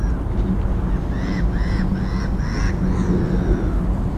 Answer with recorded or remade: recorded